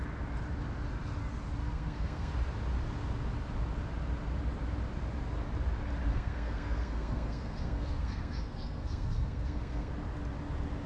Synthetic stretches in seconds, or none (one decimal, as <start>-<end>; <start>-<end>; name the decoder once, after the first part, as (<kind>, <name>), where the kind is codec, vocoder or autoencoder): 1.6-2.3 (codec, SNAC); 6.1-9.9